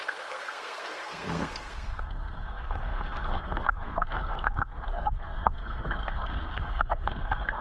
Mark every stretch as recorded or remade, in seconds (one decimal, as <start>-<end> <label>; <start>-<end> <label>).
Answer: 0.0-7.6 remade